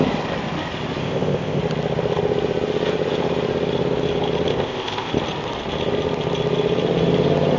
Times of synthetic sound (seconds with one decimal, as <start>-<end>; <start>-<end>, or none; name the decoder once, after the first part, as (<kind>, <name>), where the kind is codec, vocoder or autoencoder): 1.0-1.6 (codec, ZipCodec); 4.5-5.1